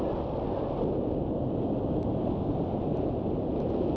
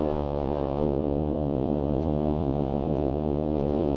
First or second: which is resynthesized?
second